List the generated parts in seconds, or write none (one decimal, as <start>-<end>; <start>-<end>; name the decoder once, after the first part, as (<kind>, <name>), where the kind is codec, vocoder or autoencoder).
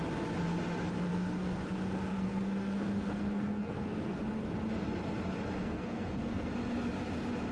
1.1-1.7 (codec, SNAC); 2.1-4.2; 5.6-6.5